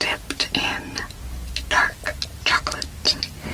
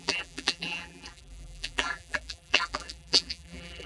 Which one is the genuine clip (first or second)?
first